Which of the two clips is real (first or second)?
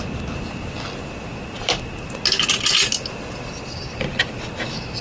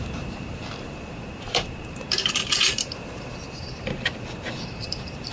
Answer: first